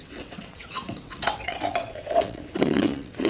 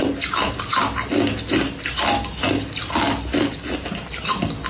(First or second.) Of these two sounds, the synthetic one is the first